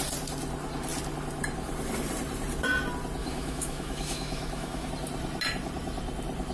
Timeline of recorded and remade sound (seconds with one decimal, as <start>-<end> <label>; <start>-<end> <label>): 0.0-3.2 recorded; 3.2-4.9 remade; 4.9-6.5 recorded